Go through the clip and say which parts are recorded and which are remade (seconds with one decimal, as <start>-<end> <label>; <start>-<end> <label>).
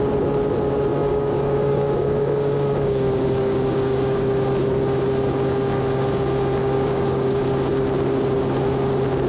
0.0-1.0 recorded; 1.0-4.3 remade; 4.3-6.6 recorded; 6.6-7.4 remade; 7.4-9.3 recorded